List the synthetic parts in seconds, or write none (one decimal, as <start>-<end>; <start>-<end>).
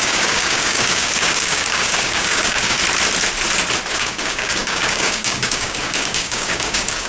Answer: 0.0-2.8; 3.9-7.1